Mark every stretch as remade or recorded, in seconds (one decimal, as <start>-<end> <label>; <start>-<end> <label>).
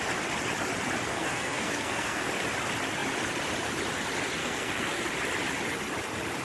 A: 0.0-1.1 recorded; 1.1-2.3 remade; 2.3-4.4 recorded; 4.4-5.0 remade; 5.0-6.4 recorded